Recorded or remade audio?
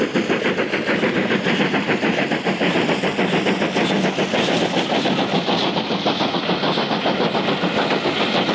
recorded